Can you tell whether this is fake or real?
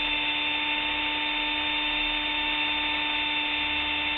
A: real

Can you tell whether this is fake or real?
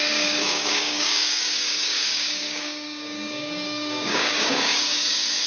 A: fake